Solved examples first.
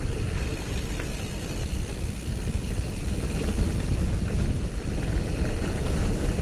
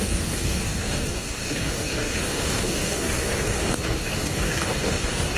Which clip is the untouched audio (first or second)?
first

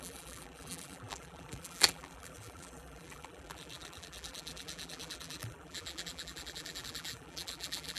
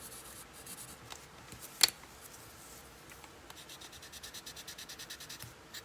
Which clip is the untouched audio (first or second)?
second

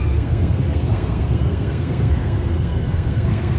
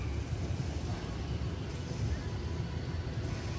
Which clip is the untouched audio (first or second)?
second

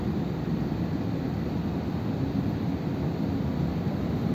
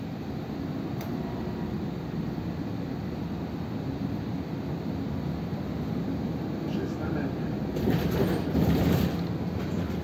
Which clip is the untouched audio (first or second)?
second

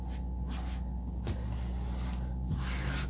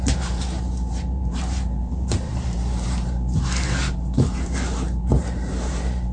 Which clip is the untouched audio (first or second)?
first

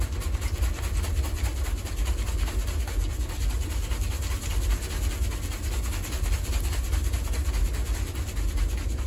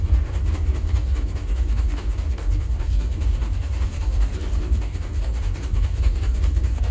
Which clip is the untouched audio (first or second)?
first